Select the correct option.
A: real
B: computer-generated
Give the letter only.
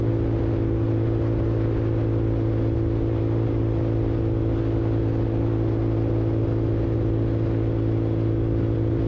A